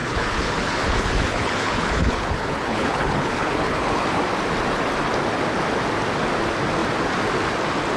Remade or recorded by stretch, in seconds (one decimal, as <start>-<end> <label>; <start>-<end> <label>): 0.0-4.2 remade; 4.2-8.0 recorded